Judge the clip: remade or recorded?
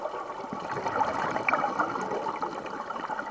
recorded